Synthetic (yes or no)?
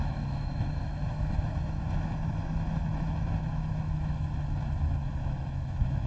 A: yes